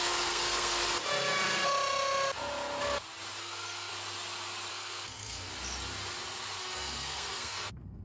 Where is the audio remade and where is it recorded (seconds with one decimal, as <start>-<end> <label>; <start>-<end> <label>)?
0.0-0.8 remade; 0.8-3.4 recorded; 3.4-3.9 remade; 3.9-4.7 recorded; 4.7-5.5 remade; 5.5-6.6 recorded; 6.6-8.0 remade